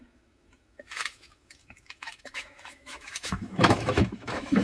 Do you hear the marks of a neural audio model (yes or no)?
yes